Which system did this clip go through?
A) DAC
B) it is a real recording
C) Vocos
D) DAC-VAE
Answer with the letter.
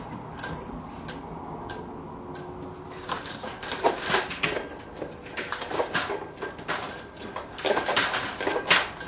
B